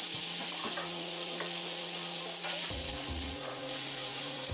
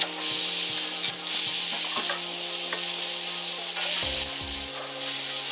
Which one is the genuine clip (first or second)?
second